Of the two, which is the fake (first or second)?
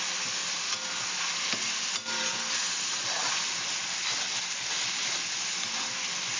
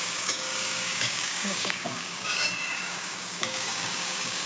second